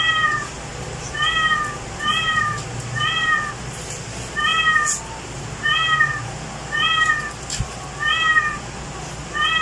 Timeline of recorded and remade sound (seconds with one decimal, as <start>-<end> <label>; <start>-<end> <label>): 0.0-9.6 recorded